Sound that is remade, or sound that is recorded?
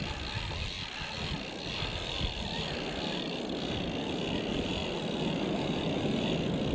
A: recorded